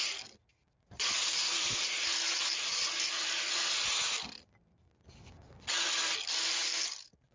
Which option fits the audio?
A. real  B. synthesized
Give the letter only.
A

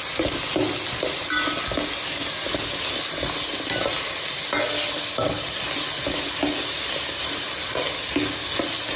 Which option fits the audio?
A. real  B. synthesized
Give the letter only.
A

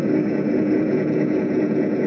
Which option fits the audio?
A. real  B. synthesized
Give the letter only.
B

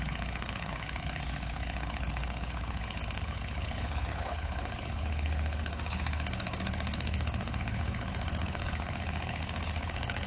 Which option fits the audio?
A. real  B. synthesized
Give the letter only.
B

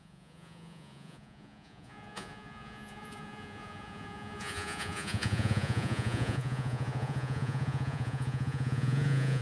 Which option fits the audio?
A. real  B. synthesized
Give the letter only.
B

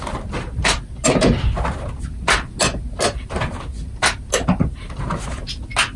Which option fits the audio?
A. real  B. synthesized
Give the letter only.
A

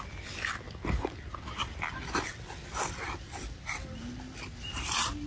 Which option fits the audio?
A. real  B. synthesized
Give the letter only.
A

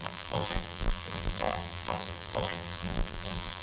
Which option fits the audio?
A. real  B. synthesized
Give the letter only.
B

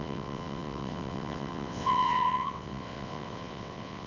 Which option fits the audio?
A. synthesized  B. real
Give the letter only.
A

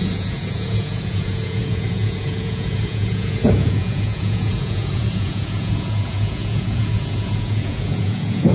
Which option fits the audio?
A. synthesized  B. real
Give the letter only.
A